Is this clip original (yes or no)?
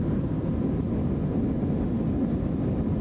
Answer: yes